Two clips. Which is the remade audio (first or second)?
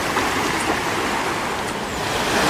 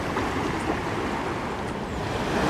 second